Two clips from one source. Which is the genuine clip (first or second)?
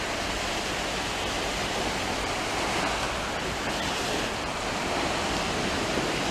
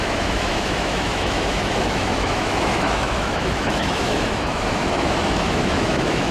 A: first